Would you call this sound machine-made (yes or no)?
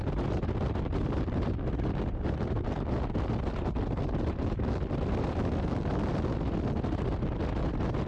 no